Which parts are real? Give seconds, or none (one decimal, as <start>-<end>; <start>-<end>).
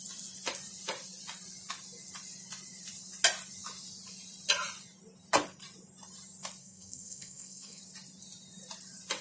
0.0-6.6; 7.8-9.2